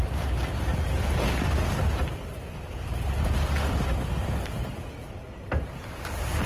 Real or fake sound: real